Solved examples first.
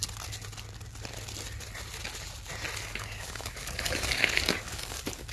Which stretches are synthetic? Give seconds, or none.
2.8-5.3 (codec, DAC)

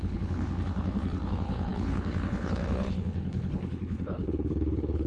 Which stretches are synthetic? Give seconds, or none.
0.0-5.1 (codec, HILCodec)